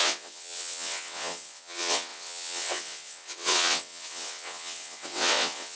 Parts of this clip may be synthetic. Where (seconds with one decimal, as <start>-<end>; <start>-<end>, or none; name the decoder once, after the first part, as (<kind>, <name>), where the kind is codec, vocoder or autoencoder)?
0.0-5.8 (vocoder, WaveNeXt)